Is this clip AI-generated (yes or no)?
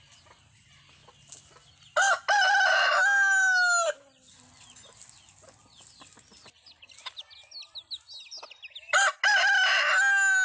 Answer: no